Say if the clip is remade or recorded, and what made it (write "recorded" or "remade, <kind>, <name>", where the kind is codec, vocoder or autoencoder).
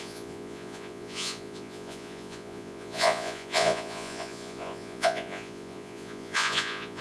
remade, vocoder, Vocos